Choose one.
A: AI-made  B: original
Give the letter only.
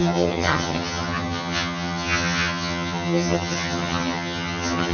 A